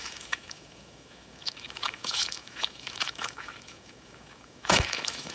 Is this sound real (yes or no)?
no